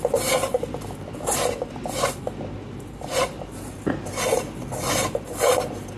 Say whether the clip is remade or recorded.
recorded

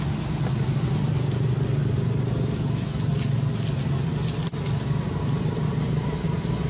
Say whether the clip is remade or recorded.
recorded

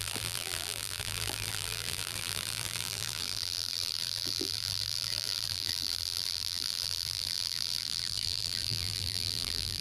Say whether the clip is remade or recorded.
remade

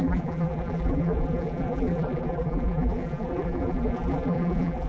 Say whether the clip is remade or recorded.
remade